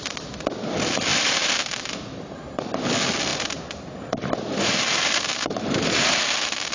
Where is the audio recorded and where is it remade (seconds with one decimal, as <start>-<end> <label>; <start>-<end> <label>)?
0.0-1.1 recorded; 1.1-2.6 remade; 2.6-3.3 recorded; 3.3-3.9 remade; 3.9-4.9 recorded; 4.9-6.2 remade; 6.2-6.7 recorded